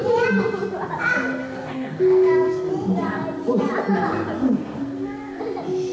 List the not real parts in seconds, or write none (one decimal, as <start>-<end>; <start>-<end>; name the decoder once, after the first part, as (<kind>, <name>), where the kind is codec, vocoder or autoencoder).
1.4-2.7 (codec, SNAC); 4.4-5.4